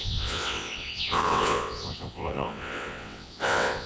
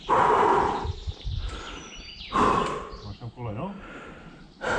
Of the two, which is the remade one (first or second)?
first